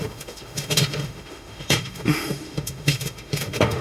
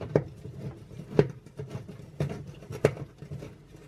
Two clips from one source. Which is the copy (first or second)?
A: first